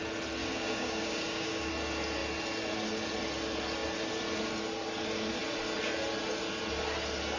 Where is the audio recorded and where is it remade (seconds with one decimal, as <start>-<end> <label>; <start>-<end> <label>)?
0.0-0.4 recorded; 0.4-1.7 remade; 1.7-7.4 recorded